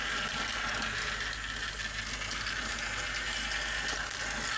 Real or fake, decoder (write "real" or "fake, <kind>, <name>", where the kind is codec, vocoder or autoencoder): real